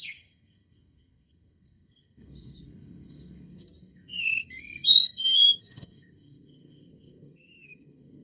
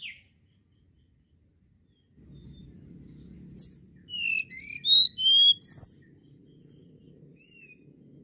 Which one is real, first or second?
second